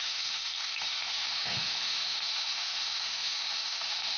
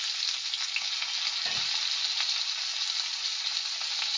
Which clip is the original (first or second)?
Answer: second